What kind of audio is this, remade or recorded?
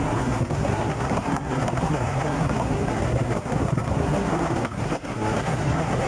remade